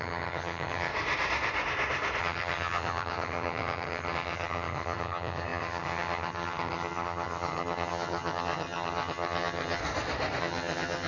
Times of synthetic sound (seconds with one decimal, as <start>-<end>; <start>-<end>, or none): 0.0-0.9; 2.2-9.8; 10.4-11.1